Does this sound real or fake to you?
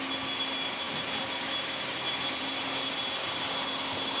real